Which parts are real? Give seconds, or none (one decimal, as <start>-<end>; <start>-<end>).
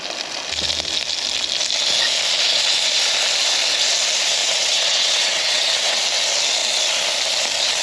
0.0-4.4; 6.0-7.8